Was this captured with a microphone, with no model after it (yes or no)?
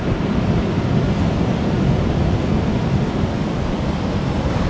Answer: yes